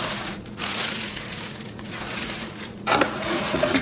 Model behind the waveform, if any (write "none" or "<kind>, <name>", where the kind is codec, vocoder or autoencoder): vocoder, Vocos